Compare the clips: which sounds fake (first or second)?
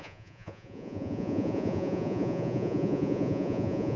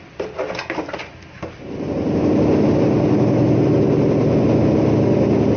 first